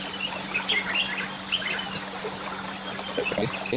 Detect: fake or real real